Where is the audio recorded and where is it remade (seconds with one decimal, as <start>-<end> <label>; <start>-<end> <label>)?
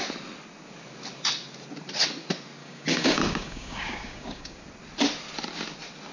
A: 0.0-2.6 recorded; 2.6-4.6 remade; 4.6-6.1 recorded